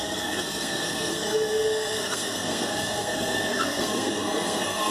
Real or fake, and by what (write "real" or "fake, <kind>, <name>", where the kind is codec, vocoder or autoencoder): fake, codec, SNAC